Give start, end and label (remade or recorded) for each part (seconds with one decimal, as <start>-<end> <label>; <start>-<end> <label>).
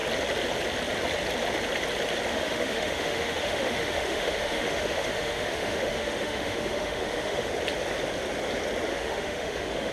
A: 0.0-2.3 recorded; 2.3-7.5 remade; 7.5-8.9 recorded; 8.9-9.9 remade